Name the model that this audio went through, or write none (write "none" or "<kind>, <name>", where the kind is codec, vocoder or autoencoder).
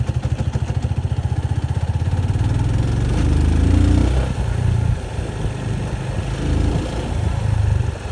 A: none